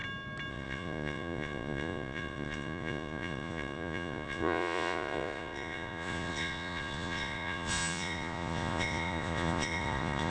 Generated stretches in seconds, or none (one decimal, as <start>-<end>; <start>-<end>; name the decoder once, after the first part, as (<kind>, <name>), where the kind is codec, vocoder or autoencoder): 0.5-10.3 (vocoder, Vocos)

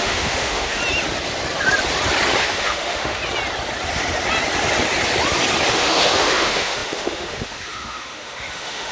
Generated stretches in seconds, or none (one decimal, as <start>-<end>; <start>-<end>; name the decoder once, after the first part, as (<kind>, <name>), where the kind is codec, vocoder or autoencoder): 0.0-0.8 (autoencoder, DAC-VAE); 2.4-3.2; 5.7-8.9

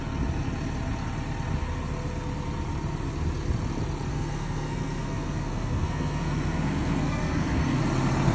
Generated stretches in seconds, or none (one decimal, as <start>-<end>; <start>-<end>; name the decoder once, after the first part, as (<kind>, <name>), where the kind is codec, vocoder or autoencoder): 4.1-7.8 (codec, SNAC)

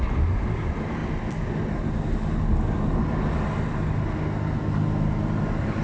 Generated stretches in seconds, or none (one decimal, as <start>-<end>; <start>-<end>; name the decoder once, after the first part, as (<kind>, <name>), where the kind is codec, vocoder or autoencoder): none

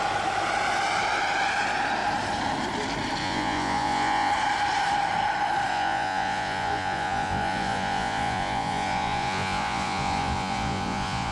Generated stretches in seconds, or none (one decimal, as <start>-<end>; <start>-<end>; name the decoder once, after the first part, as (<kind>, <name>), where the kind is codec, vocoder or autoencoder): 3.2-4.3 (vocoder, Vocos); 5.7-11.3